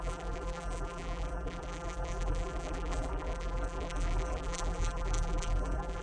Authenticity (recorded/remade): remade